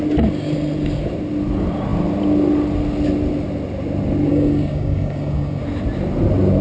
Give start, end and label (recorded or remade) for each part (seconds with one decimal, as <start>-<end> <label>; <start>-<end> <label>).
0.0-4.3 recorded; 4.3-5.6 remade; 5.6-6.6 recorded